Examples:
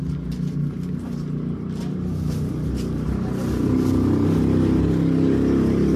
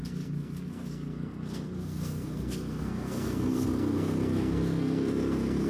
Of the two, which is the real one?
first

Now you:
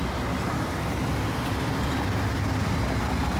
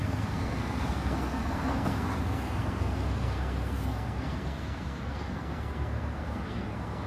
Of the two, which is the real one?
first